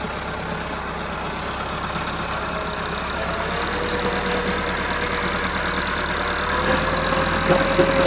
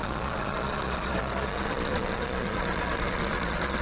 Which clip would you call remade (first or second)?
second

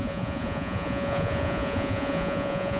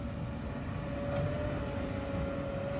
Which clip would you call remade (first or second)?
first